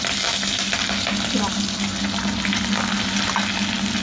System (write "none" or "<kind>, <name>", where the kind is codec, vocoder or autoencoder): none